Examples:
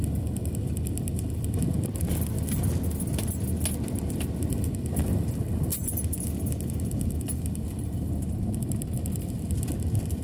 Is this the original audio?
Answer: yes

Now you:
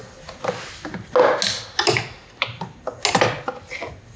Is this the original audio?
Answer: yes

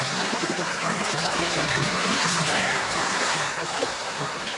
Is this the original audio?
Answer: no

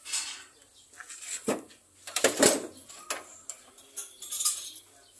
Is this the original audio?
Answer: yes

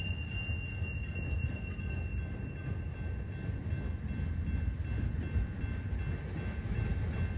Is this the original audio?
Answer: yes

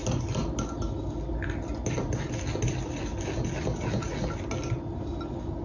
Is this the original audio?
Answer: yes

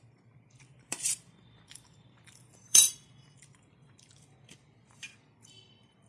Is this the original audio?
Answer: no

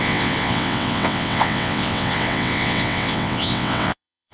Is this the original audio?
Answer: no